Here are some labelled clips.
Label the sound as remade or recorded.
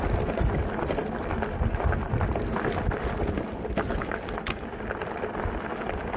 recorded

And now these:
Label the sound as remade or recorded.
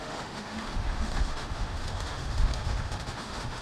remade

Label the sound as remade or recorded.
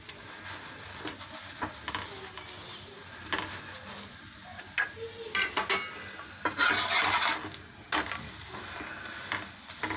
recorded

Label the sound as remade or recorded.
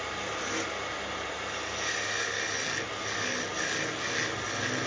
recorded